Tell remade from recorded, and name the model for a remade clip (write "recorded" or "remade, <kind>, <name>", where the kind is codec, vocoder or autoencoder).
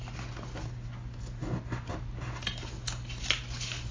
recorded